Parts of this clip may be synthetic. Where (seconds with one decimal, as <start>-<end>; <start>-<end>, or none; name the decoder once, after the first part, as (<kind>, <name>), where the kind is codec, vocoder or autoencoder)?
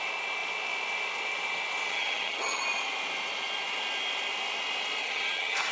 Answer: 1.9-2.6 (vocoder, HiFi-GAN); 5.0-5.7